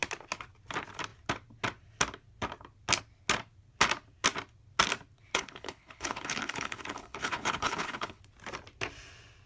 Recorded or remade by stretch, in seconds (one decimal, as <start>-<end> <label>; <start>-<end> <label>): 0.0-5.3 recorded; 5.3-8.2 remade; 8.2-9.5 recorded